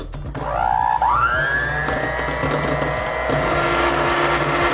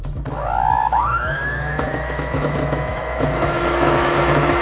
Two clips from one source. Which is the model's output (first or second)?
second